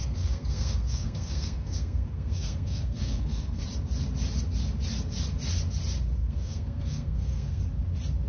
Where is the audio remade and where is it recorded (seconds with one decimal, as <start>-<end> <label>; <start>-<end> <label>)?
0.0-3.6 remade; 3.6-6.2 recorded; 6.2-7.6 remade; 7.6-8.3 recorded